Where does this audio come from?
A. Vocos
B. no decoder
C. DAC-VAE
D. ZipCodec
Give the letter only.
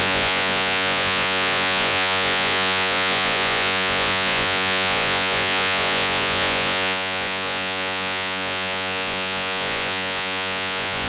A